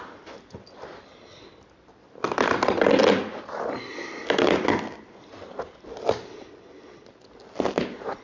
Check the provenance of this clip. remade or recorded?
recorded